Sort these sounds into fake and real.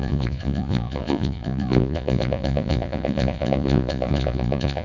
fake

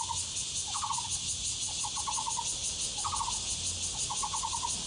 real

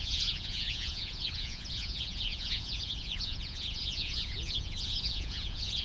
fake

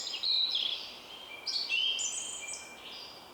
real